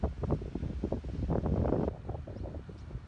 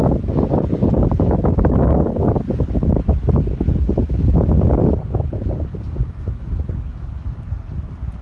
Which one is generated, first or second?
second